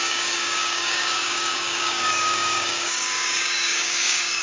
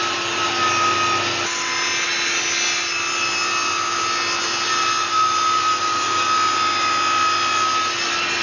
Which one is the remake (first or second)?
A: first